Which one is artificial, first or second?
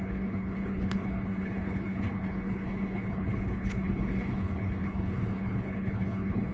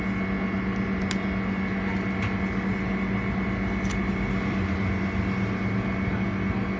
first